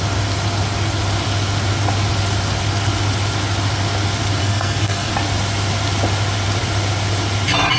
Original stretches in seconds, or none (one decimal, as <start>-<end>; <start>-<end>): 0.0-4.4; 5.1-7.8